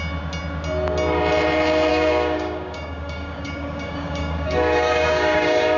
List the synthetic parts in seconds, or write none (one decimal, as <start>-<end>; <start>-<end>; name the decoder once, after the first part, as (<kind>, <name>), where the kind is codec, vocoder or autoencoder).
1.9-5.8 (codec, DAC)